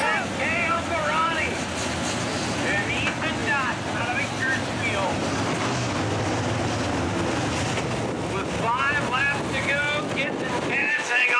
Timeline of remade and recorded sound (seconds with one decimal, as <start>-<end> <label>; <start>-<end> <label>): 0.0-10.8 recorded; 10.8-11.4 remade